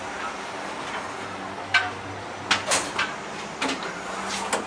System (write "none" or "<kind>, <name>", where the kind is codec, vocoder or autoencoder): none